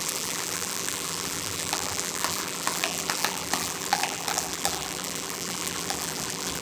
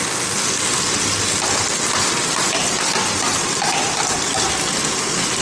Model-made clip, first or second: first